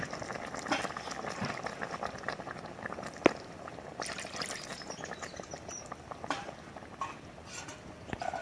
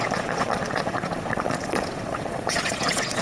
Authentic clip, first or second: first